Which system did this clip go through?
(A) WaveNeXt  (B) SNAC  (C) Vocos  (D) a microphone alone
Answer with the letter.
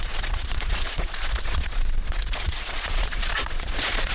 C